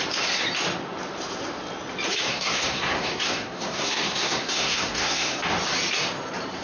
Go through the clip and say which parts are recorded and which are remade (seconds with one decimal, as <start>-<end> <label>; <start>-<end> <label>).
0.0-2.3 recorded; 2.3-5.4 remade; 5.4-6.6 recorded